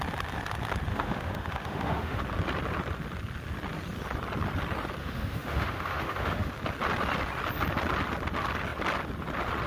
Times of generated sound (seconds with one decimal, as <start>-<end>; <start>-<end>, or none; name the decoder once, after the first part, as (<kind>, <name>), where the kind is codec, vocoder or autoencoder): 0.9-2.2 (autoencoder, DAC-VAE); 5.0-6.5